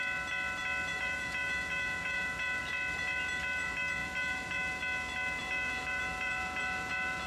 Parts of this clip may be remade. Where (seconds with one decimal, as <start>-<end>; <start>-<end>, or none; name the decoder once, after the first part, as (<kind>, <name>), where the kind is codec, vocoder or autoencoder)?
0.9-2.6 (vocoder, Vocos); 4.0-4.8; 5.4-7.3